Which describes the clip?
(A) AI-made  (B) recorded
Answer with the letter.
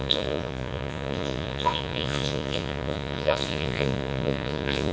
A